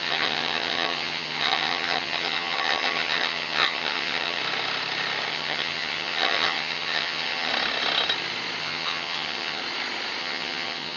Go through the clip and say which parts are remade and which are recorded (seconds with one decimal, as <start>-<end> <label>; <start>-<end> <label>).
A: 0.0-4.4 remade; 4.4-5.3 recorded; 5.3-7.5 remade; 7.5-8.6 recorded; 8.6-9.6 remade; 9.6-10.2 recorded; 10.2-11.0 remade